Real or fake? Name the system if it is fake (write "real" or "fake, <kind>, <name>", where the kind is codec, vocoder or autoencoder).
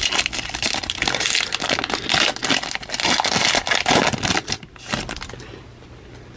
real